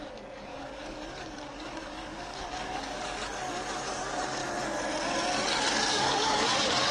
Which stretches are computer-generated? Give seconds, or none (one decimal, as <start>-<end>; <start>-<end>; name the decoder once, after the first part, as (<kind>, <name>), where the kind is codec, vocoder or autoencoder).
0.0-4.4 (codec, DAC); 5.9-6.9